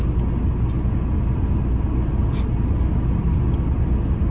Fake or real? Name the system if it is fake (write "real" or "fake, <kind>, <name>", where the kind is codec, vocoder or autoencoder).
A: real